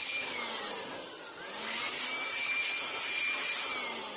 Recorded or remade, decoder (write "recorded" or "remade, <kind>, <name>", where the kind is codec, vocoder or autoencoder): recorded